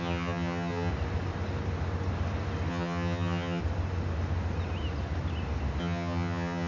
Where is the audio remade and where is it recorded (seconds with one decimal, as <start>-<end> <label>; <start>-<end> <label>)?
0.0-0.9 remade; 0.9-2.7 recorded; 2.7-3.6 remade; 3.6-5.8 recorded; 5.8-6.7 remade